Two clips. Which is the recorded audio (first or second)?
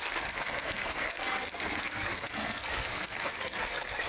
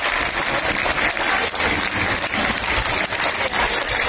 second